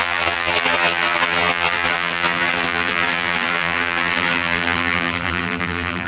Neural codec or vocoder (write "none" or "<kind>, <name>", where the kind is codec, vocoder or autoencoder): vocoder, BigVGAN v2